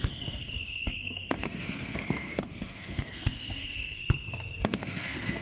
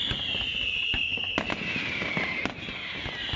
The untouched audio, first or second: second